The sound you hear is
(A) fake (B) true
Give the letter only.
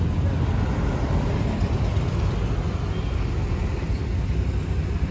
B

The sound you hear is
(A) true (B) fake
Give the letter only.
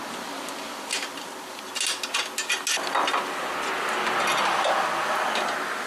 A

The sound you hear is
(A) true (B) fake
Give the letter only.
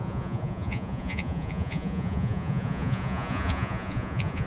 B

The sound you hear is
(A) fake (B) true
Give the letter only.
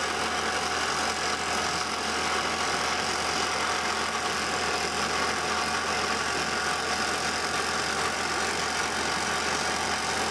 B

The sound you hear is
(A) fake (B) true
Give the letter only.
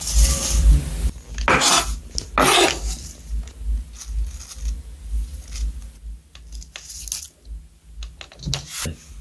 B